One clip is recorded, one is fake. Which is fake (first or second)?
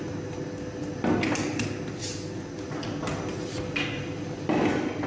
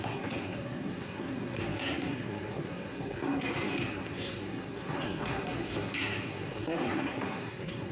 second